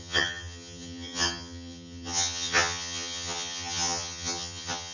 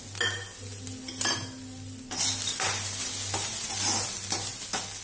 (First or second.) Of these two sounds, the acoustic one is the second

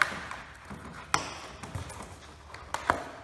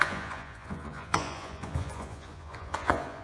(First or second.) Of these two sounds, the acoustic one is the first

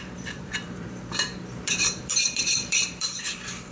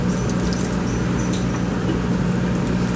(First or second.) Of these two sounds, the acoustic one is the second